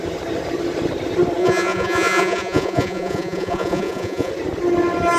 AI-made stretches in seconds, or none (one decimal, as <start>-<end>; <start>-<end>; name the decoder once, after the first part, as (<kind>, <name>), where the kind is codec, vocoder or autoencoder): 1.4-4.3 (vocoder, Vocos)